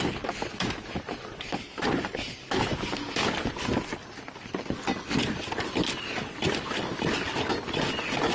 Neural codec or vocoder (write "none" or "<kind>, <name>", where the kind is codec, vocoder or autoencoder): none